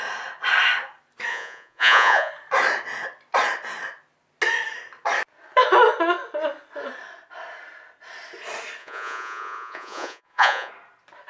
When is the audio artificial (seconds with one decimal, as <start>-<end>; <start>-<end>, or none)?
1.3-2.3; 8.8-10.7

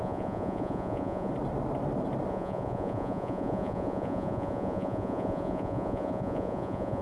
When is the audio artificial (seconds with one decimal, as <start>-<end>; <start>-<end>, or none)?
0.0-1.3; 2.3-7.0